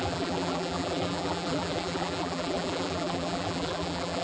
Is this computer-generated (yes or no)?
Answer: yes